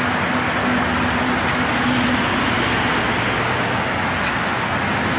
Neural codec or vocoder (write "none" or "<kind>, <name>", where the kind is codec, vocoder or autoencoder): none